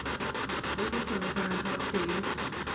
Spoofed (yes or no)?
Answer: no